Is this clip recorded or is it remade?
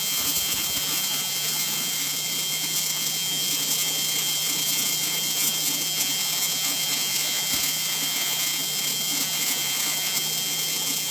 remade